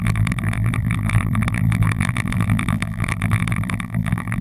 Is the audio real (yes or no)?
no